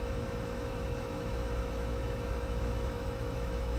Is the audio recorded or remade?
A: remade